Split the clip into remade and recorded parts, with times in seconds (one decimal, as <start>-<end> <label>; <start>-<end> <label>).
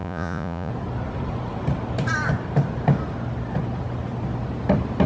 0.0-0.7 remade; 0.7-5.1 recorded